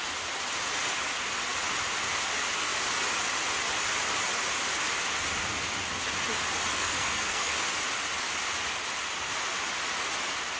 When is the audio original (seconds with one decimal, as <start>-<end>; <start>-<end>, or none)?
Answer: 0.0-6.7; 7.6-10.6